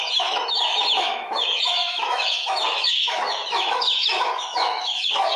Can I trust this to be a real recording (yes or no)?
no